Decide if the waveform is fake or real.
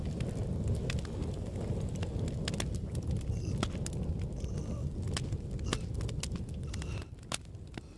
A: real